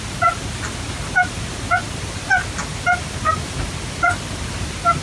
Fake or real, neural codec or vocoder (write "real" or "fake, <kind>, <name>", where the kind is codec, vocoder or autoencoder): real